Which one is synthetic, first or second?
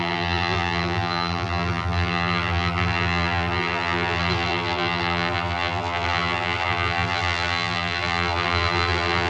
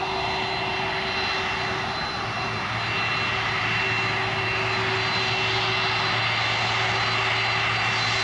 first